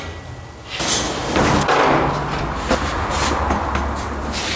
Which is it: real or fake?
real